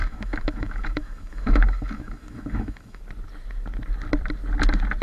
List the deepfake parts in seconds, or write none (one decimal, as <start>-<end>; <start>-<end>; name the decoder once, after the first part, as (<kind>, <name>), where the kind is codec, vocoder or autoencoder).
0.0-3.0 (autoencoder, DAC-VAE)